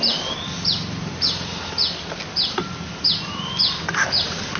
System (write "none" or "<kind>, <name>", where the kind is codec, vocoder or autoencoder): none